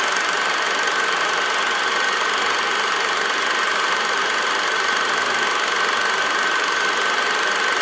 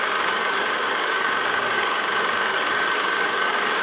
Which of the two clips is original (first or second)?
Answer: first